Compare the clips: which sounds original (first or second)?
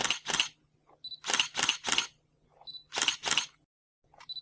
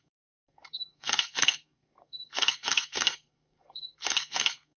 first